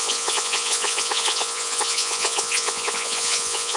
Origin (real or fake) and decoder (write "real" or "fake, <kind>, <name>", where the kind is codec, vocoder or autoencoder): fake, vocoder, Vocos